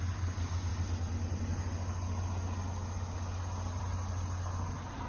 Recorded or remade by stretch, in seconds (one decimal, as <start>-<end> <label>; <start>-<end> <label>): 0.0-5.1 recorded